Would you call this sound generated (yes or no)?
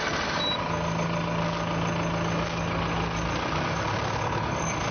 no